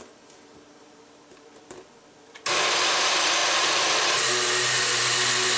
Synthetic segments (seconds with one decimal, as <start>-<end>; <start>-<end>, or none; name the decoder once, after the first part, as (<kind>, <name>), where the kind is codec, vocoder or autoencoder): none